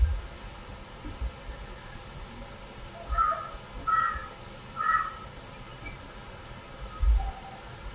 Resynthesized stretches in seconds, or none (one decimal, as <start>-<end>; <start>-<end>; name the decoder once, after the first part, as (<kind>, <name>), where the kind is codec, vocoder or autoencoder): none